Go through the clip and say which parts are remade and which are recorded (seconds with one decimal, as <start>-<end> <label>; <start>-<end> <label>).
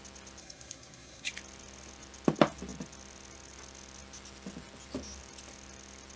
0.0-0.4 recorded; 0.4-1.3 remade; 1.3-6.2 recorded